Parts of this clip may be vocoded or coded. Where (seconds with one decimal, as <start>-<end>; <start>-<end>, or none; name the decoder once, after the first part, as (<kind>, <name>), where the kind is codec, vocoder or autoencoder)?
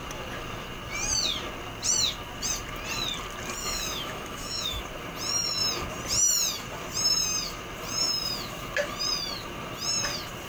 3.6-4.8 (autoencoder, DAC-VAE)